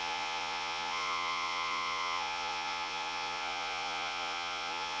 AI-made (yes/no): yes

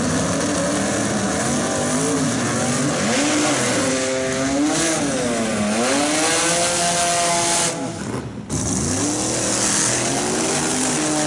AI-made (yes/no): no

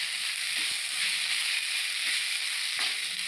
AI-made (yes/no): no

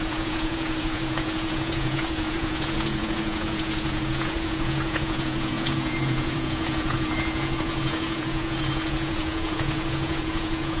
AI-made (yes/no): yes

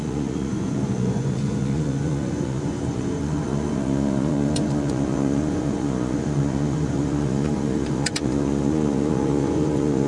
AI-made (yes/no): yes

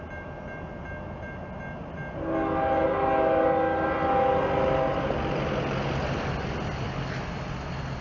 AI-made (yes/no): no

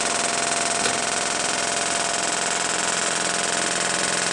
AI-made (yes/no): no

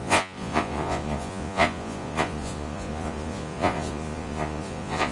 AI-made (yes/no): yes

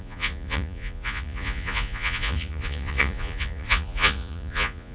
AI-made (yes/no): yes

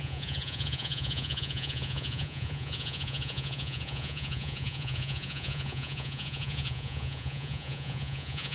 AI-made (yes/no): yes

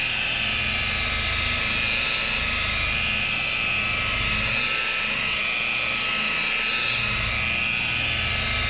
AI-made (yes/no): no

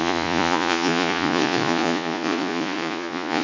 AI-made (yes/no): yes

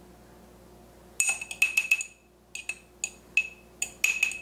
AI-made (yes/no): no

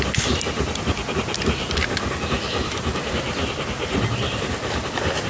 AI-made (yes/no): no